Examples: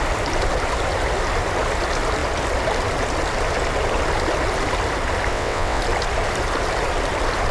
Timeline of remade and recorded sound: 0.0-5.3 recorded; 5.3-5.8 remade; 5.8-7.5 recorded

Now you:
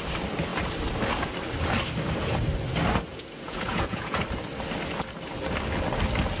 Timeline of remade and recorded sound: 0.0-3.1 recorded; 3.1-4.2 remade; 4.2-6.4 recorded

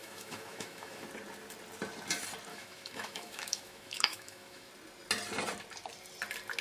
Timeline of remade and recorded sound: 0.0-1.0 remade; 1.0-2.5 recorded; 2.5-4.7 remade; 4.7-6.6 recorded

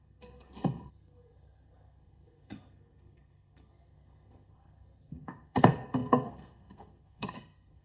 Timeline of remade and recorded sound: 0.0-7.8 remade

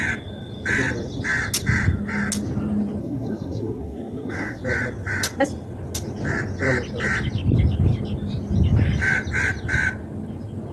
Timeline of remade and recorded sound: 0.0-3.0 recorded; 3.0-4.6 remade; 4.6-10.7 recorded